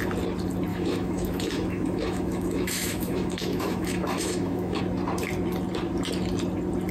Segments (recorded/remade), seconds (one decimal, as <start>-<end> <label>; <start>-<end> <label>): 0.0-0.7 recorded; 0.7-4.8 remade; 4.8-6.9 recorded